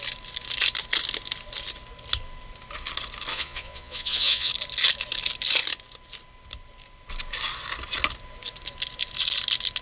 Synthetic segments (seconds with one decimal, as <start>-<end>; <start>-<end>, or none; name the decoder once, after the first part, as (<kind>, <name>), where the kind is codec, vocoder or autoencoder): 3.3-4.5 (vocoder, Vocos)